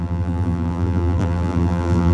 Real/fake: fake